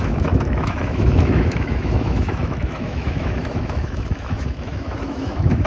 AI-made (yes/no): yes